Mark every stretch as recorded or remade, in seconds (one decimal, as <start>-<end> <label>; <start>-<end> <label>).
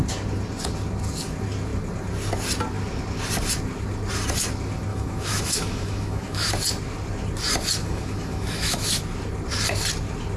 0.0-4.9 recorded; 4.9-6.5 remade; 6.5-7.8 recorded; 7.8-9.0 remade; 9.0-10.4 recorded